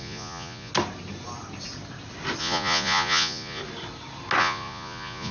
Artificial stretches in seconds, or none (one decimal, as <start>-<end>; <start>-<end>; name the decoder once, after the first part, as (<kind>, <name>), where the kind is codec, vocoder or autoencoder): 0.0-0.7 (vocoder, Vocos); 2.4-3.6; 4.4-5.3